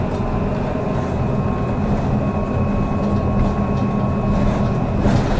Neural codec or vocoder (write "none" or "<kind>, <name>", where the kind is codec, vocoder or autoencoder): none